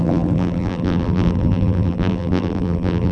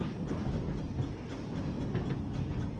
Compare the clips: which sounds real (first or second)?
second